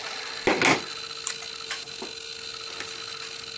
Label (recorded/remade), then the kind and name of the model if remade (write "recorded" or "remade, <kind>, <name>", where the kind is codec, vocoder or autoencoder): recorded